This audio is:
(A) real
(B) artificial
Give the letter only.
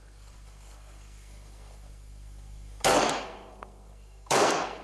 B